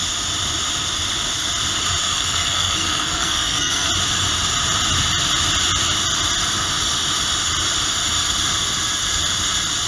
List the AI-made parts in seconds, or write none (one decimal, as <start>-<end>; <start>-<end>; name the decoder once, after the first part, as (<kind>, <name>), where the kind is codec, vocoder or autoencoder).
2.0-3.9 (codec, SNAC)